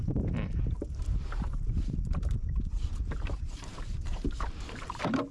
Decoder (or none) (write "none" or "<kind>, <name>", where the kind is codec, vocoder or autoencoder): vocoder, BigVGAN v2